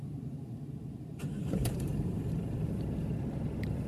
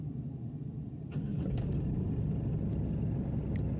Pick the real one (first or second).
second